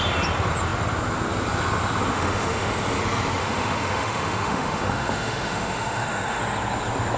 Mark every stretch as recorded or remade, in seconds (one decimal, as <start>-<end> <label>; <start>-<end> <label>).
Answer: 0.0-2.1 recorded; 2.1-2.7 remade; 2.7-3.4 recorded; 3.4-6.4 remade; 6.4-7.2 recorded